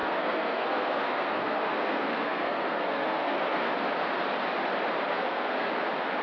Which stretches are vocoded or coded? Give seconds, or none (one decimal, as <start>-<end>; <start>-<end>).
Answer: 0.0-3.7; 5.1-5.7